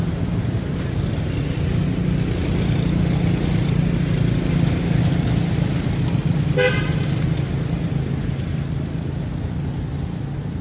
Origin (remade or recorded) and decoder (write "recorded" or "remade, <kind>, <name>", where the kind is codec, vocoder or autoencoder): recorded